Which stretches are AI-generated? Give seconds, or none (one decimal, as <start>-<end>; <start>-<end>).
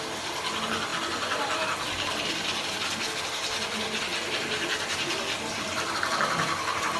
none